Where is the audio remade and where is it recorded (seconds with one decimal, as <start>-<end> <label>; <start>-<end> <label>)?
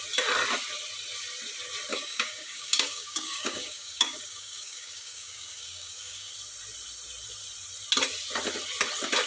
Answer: 0.0-1.9 recorded; 1.9-6.3 remade; 6.3-9.3 recorded